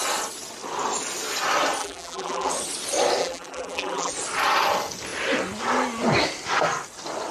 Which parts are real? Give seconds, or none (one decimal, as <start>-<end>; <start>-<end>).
0.0-1.8; 2.5-3.2; 4.1-7.3